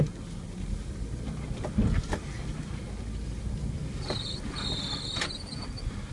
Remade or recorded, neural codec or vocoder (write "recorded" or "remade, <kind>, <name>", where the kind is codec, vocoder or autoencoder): recorded